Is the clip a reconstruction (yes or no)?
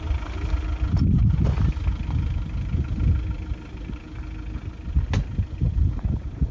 no